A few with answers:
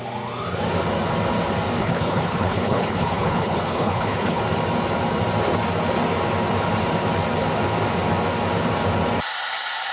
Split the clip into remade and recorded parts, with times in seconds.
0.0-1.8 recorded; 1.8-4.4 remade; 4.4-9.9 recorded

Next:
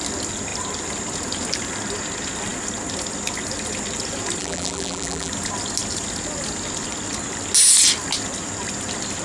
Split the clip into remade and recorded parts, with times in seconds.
0.0-4.4 recorded; 4.4-5.3 remade; 5.3-9.2 recorded